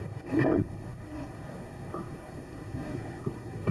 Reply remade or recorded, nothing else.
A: remade